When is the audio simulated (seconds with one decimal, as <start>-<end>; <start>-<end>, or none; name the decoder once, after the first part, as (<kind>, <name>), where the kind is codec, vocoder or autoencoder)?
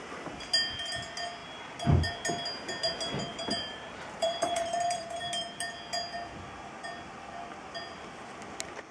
3.3-5.2 (vocoder, BigVGAN v2)